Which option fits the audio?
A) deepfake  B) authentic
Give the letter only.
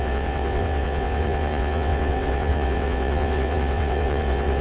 A